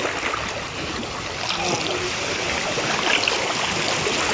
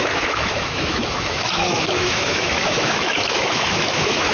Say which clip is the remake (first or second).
second